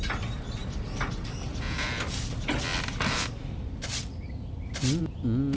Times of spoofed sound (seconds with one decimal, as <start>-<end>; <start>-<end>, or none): none